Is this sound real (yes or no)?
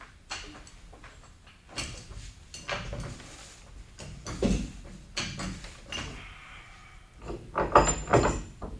yes